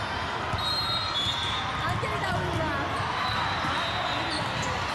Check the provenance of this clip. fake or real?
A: real